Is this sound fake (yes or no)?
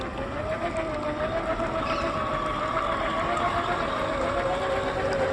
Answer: no